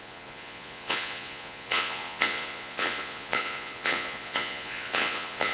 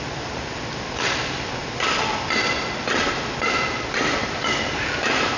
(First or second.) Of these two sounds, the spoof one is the first